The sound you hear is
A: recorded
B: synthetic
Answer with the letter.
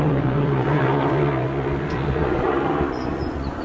B